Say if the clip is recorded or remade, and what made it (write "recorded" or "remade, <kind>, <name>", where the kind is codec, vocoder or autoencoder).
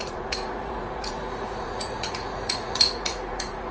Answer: remade, vocoder, Vocos